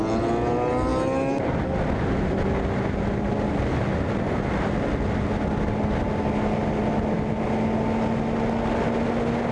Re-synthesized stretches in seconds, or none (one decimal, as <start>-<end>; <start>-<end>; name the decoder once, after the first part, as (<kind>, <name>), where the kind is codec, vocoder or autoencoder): none

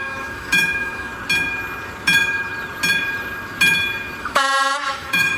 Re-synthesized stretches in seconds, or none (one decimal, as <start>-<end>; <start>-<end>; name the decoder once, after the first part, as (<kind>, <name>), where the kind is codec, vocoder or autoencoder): 0.0-1.1 (autoencoder, DAC-VAE); 4.2-5.4